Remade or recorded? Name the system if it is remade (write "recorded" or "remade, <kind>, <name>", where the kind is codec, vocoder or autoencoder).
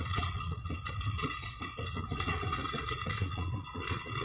remade, vocoder, Vocos